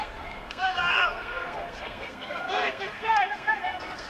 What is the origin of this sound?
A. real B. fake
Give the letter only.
B